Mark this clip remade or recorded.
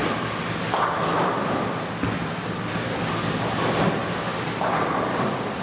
recorded